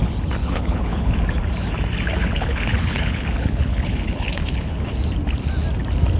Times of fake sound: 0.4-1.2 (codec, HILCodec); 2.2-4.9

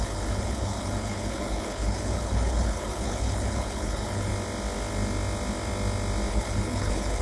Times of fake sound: 0.0-4.3 (codec, HILCodec); 6.3-7.2

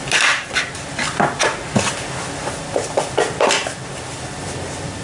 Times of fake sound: none

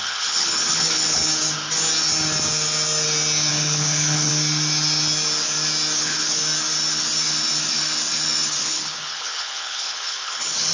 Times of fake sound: 0.0-1.2 (codec, HILCodec); 3.5-4.3; 6.0-6.4; 8.6-10.7

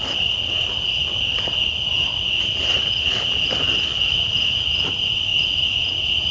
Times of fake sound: none